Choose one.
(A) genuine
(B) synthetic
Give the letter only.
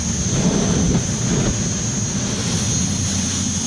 A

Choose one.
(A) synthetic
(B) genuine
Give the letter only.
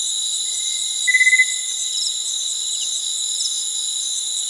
B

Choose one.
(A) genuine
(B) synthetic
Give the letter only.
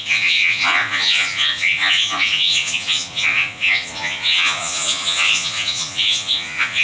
B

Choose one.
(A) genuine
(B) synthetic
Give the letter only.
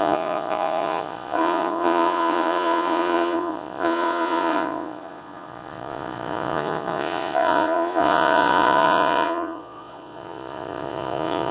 B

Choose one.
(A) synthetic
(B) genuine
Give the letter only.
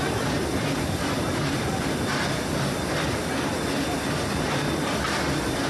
B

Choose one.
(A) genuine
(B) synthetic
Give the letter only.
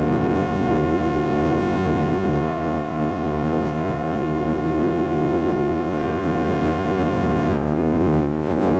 B